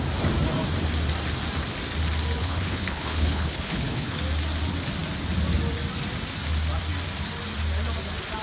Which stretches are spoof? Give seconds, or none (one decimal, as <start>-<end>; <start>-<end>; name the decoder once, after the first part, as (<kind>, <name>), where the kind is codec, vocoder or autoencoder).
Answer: 2.4-4.2 (codec, HILCodec)